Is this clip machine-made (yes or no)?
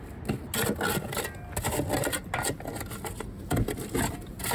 no